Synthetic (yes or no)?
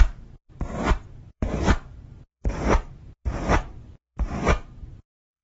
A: yes